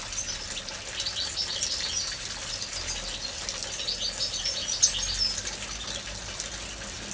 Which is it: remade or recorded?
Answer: recorded